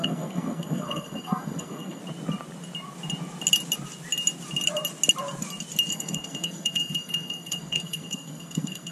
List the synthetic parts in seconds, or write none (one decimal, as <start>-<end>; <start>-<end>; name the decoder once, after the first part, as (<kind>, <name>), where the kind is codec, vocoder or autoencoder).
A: 0.0-2.0 (codec, SNAC); 5.9-8.9